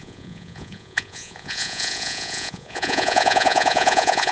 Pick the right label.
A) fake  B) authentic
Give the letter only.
A